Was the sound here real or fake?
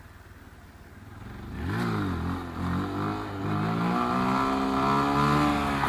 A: real